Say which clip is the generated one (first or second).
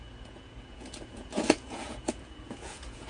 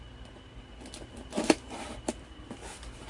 first